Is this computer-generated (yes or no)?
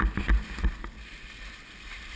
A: no